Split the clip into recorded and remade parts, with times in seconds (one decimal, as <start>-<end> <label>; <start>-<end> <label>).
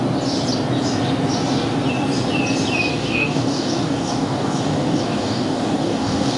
0.0-2.9 recorded; 2.9-6.4 remade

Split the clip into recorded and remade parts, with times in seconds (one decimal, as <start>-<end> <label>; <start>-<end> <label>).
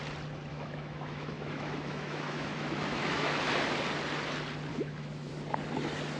0.0-0.5 recorded; 0.5-3.4 remade; 3.4-4.7 recorded; 4.7-5.3 remade; 5.3-6.2 recorded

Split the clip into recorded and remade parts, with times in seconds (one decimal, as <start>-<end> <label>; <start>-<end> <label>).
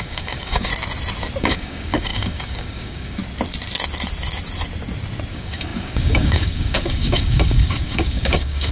0.0-0.7 remade; 0.7-1.4 recorded; 1.4-3.2 remade; 3.2-5.3 recorded; 5.3-8.7 remade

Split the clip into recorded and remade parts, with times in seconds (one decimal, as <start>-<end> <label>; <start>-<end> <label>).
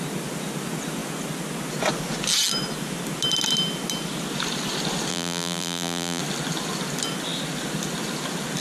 0.0-5.1 recorded; 5.1-6.2 remade; 6.2-8.6 recorded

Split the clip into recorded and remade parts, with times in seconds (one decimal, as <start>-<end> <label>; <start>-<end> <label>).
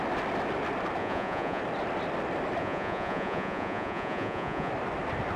0.0-1.0 recorded; 1.0-1.6 remade; 1.6-2.6 recorded; 2.6-4.7 remade; 4.7-5.4 recorded